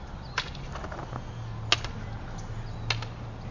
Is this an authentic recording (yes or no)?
yes